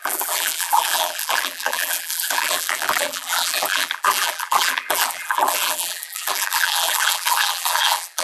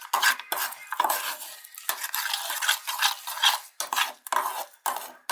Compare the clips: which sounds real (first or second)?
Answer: second